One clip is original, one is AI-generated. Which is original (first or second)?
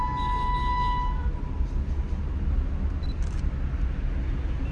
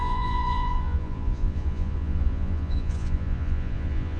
first